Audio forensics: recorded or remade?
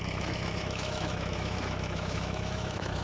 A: remade